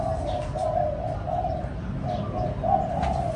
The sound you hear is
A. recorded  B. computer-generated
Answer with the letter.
A